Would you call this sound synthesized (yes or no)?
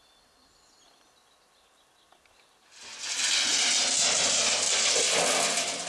no